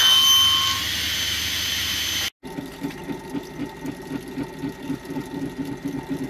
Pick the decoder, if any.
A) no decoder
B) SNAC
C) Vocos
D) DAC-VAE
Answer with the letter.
A